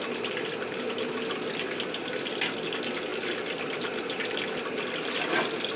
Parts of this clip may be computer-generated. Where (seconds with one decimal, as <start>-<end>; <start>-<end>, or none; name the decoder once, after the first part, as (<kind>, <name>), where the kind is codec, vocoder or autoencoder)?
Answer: none